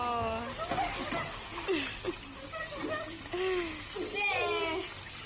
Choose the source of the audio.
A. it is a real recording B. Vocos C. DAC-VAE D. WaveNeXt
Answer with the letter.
A